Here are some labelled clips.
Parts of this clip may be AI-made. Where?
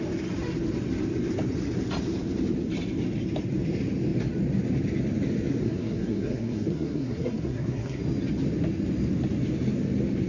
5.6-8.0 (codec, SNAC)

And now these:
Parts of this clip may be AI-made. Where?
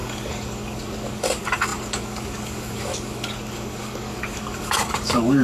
0.0-5.4 (codec, DAC)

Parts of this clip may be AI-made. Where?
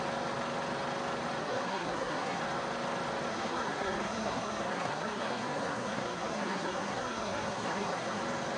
1.4-2.4 (codec, SNAC); 3.3-8.2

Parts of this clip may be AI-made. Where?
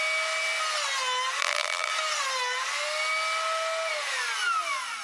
1.4-1.9 (vocoder, BigVGAN v2)